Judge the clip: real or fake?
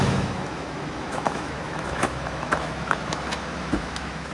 fake